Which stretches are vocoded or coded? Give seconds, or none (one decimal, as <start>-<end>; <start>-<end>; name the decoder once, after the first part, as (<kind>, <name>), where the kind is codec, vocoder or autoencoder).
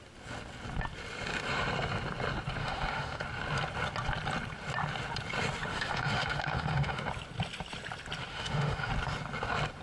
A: 2.6-3.2 (autoencoder, DAC-VAE); 5.7-7.0; 8.3-8.9